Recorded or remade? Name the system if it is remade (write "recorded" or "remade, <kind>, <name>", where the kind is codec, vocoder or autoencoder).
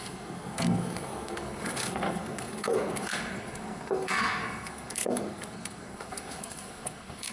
remade, codec, SNAC